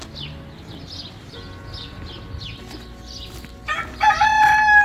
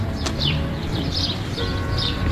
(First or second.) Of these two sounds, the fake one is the second